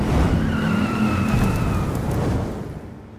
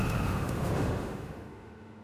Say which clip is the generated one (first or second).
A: second